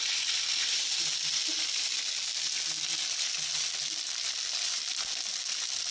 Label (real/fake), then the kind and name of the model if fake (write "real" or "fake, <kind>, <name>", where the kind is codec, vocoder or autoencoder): real